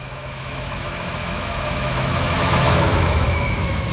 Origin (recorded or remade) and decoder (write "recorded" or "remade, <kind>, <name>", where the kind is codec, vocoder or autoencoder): remade, autoencoder, DAC-VAE